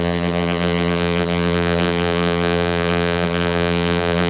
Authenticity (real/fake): fake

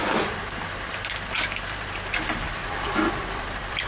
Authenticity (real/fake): fake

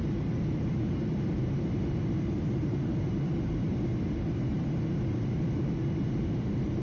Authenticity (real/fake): fake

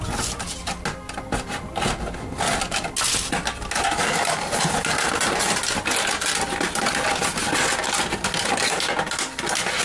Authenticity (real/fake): real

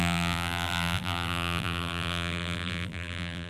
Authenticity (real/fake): fake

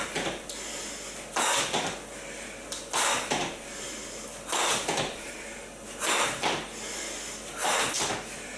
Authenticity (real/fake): real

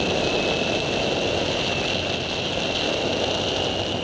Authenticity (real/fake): real